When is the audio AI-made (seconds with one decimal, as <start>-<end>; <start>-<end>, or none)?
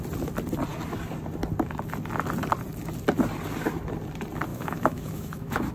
4.5-5.7